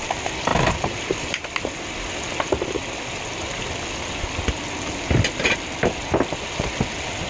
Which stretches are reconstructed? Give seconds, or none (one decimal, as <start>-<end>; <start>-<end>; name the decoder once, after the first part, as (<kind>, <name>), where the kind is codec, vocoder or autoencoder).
none